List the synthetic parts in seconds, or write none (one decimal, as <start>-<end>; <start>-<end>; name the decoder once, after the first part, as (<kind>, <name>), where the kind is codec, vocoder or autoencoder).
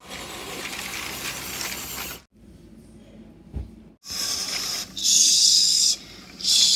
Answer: 5.0-5.9 (codec, DAC)